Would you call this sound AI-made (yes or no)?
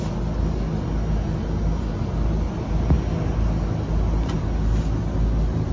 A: no